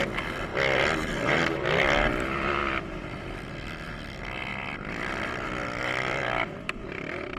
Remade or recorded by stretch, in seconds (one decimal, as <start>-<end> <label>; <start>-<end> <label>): 0.0-7.4 recorded